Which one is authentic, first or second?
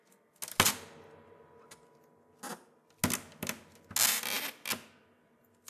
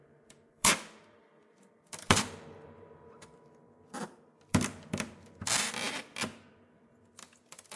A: first